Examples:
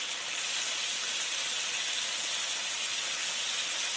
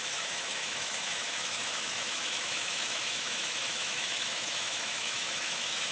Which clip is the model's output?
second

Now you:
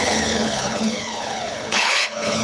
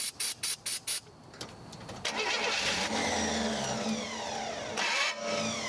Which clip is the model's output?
first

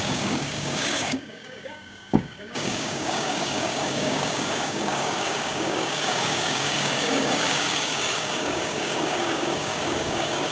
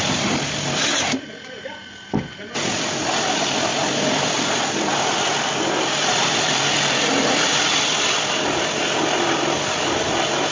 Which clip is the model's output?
first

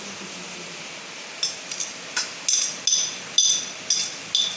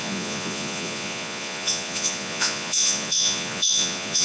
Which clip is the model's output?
second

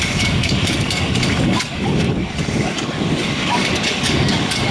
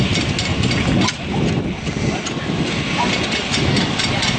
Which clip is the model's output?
first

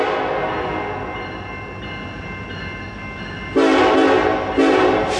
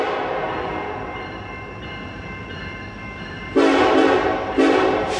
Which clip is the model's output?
second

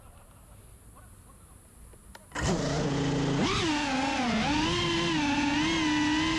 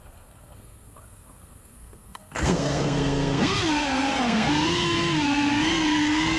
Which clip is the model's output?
second